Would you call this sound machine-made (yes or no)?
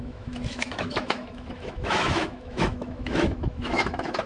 yes